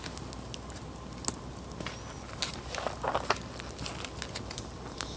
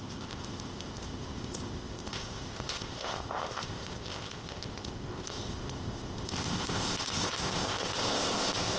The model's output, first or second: second